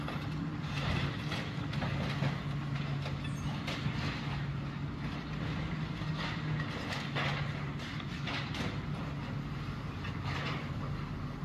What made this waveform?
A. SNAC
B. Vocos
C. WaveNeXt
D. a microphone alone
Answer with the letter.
D